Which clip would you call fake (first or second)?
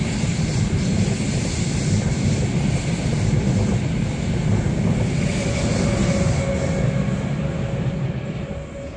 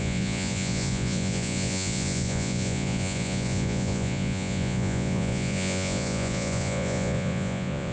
second